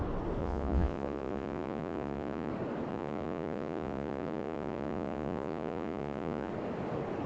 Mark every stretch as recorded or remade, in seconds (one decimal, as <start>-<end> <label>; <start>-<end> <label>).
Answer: 0.0-0.4 recorded; 0.4-2.5 remade; 2.5-2.9 recorded; 2.9-6.5 remade; 6.5-7.3 recorded